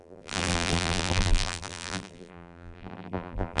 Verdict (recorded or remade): remade